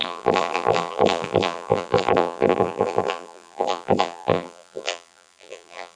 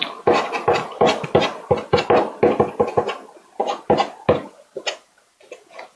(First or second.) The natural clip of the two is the second